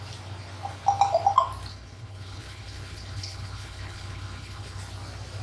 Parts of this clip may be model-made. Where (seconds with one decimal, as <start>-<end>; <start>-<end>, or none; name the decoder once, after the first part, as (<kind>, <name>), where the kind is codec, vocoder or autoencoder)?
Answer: 1.7-4.8 (codec, HILCodec)